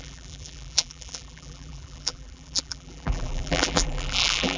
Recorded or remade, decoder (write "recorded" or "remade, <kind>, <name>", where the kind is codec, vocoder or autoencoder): remade, vocoder, BigVGAN v2